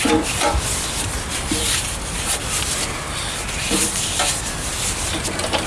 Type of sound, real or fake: fake